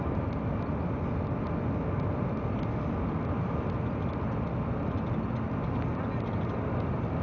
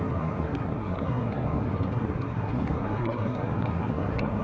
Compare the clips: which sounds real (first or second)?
first